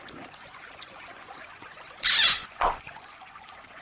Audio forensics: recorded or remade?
remade